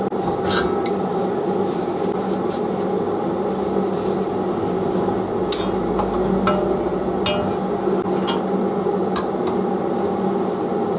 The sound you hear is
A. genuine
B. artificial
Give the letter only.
A